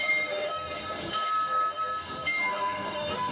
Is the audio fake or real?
fake